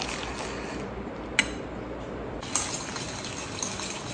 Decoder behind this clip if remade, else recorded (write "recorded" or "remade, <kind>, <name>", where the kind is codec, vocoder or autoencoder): recorded